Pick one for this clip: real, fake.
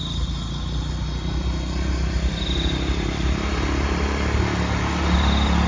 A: real